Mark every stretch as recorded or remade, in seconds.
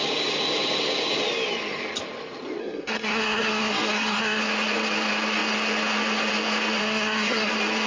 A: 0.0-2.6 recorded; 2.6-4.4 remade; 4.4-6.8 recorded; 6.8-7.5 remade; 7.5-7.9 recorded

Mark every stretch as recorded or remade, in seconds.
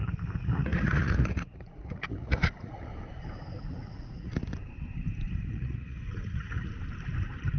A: 0.0-2.9 remade; 2.9-3.6 recorded; 3.6-4.3 remade; 4.3-5.5 recorded; 5.5-6.7 remade; 6.7-7.6 recorded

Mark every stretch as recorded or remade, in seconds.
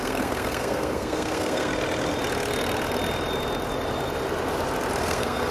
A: 0.0-1.7 remade; 1.7-5.0 recorded; 5.0-5.5 remade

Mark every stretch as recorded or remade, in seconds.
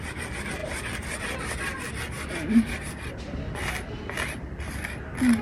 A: 0.0-5.4 recorded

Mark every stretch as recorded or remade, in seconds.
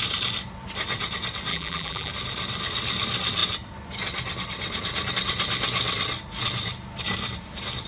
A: 0.0-1.5 recorded; 1.5-2.1 remade; 2.1-7.9 recorded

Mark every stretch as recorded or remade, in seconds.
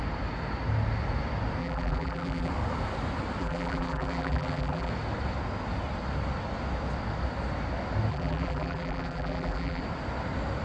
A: 0.0-1.6 recorded; 1.6-2.5 remade; 2.5-3.4 recorded; 3.4-4.9 remade; 4.9-8.1 recorded; 8.1-9.8 remade; 9.8-10.6 recorded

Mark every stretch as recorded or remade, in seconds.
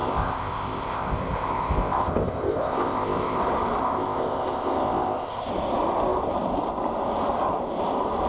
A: 0.0-3.4 remade; 3.4-3.8 recorded; 3.8-5.5 remade; 5.5-8.3 recorded